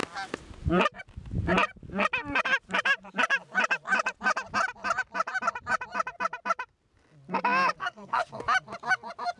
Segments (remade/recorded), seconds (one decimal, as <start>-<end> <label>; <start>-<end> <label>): 0.0-7.8 recorded; 7.8-8.4 remade; 8.4-9.4 recorded